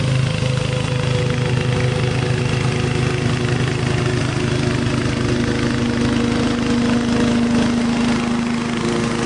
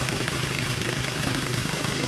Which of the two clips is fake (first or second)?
second